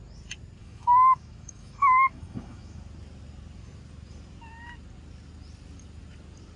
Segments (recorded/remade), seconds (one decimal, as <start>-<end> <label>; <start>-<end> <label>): 0.0-0.6 recorded; 0.6-2.8 remade; 2.8-6.6 recorded